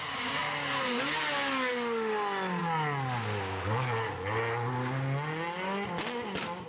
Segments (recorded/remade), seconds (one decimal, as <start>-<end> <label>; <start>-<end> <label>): 0.0-6.7 recorded